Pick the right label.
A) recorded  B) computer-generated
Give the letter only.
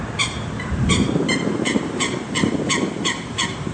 B